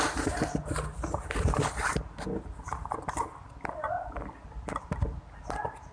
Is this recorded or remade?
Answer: remade